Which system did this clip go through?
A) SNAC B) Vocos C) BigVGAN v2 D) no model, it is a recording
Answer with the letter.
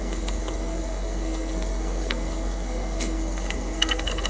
A